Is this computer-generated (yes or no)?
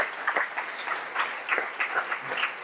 no